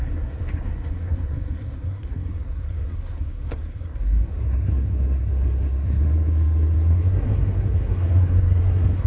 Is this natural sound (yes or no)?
no